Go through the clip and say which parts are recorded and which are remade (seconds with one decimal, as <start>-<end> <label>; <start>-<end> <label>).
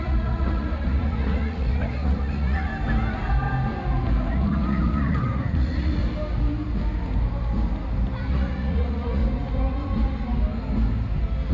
0.0-2.7 remade; 2.7-4.3 recorded; 4.3-6.0 remade; 6.0-8.3 recorded; 8.3-9.2 remade; 9.2-11.5 recorded